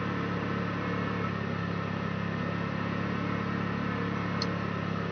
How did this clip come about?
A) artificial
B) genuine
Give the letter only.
B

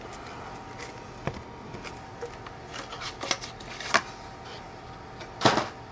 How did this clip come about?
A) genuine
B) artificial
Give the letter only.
A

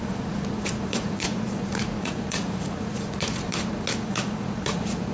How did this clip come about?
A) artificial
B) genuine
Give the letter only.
A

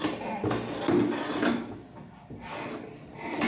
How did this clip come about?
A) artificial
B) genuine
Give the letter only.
B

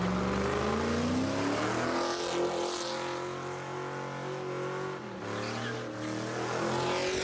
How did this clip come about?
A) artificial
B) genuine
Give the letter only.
B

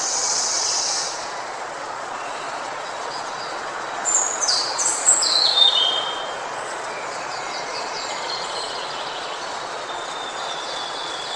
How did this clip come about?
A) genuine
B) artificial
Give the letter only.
B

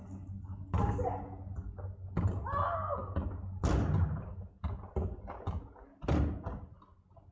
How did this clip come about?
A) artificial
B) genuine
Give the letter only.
B